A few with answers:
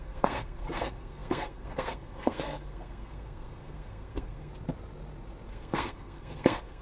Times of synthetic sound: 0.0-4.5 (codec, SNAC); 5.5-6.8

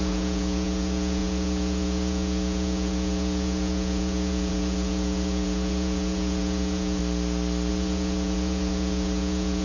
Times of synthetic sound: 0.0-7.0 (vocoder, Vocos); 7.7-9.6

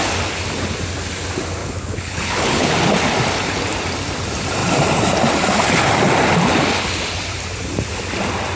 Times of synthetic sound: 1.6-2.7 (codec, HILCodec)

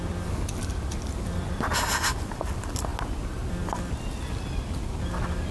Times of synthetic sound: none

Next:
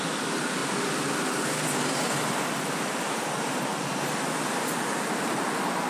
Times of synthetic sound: none

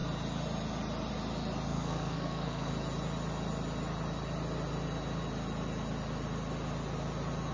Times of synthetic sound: 1.7-2.7 (codec, SNAC)